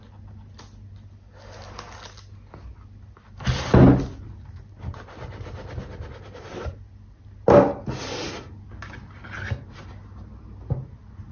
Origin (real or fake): real